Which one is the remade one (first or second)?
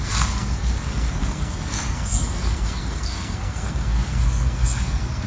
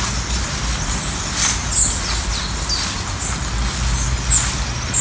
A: first